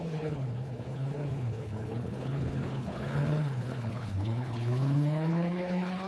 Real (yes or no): no